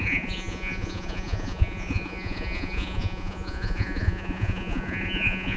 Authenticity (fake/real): fake